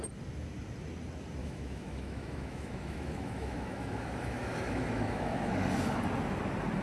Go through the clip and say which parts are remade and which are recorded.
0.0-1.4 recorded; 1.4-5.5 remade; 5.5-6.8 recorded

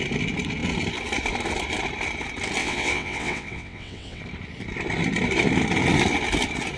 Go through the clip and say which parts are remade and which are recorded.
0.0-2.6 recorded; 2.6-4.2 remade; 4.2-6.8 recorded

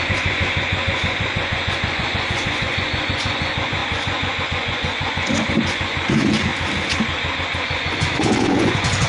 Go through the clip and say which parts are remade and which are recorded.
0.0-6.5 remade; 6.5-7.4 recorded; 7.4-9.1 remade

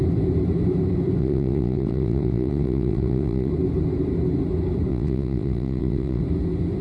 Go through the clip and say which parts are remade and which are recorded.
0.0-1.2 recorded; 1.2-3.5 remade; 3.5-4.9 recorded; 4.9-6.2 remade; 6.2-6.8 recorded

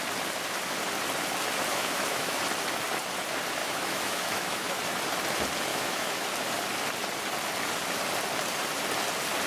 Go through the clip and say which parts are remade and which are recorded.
0.0-1.7 recorded; 1.7-2.4 remade; 2.4-3.6 recorded; 3.6-4.8 remade; 4.8-5.7 recorded; 5.7-6.3 remade; 6.3-9.5 recorded

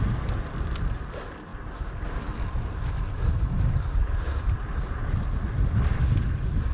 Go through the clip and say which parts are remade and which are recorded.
0.0-6.7 recorded

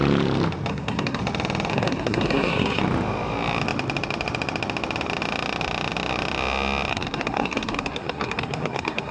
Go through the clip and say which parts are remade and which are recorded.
0.0-0.7 recorded; 0.7-1.2 remade; 1.2-1.7 recorded; 1.7-2.8 remade; 2.8-6.9 recorded; 6.9-9.1 remade